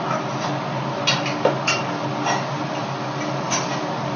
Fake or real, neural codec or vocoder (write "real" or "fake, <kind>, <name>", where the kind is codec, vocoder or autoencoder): real